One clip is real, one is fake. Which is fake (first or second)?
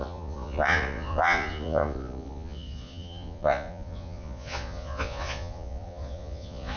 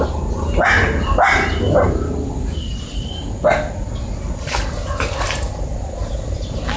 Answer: first